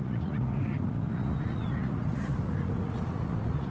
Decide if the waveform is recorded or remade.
remade